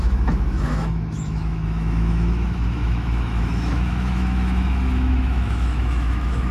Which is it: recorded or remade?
remade